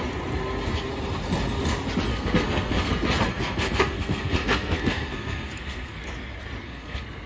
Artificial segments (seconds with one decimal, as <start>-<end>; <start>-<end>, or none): 2.1-2.9; 3.3-6.0; 6.6-7.3